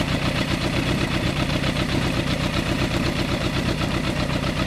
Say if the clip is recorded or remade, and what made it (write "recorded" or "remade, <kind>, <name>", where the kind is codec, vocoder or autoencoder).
remade, vocoder, BigVGAN v2